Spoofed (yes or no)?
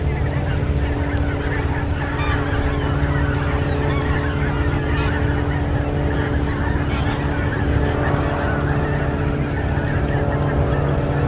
no